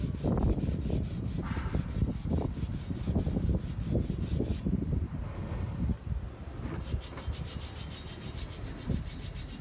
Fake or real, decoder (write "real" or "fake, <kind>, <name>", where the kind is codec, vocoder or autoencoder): real